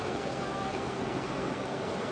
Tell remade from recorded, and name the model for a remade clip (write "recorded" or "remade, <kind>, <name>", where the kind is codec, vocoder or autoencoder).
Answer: remade, codec, SNAC